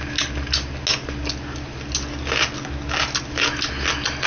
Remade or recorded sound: recorded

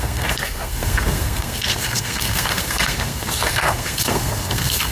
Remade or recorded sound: remade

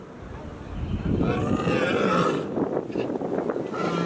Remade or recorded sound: recorded